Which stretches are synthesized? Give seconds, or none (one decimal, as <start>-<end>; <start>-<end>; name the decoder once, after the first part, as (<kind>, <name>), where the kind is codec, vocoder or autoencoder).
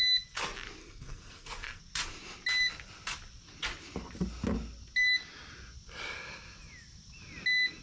0.8-1.8 (codec, SNAC)